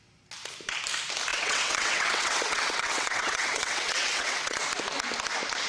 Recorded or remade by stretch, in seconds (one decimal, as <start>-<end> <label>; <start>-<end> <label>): 0.0-1.3 recorded; 1.3-4.6 remade; 4.6-5.7 recorded